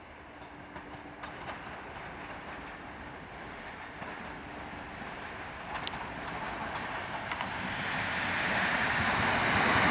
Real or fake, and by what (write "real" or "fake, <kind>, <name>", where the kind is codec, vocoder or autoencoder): fake, vocoder, BigVGAN v2